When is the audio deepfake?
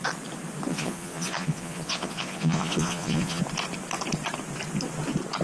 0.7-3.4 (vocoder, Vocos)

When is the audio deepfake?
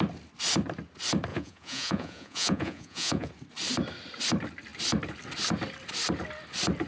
1.3-3.3 (vocoder, Vocos)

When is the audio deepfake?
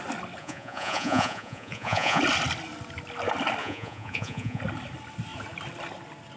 0.4-2.2 (vocoder, Vocos); 3.6-4.6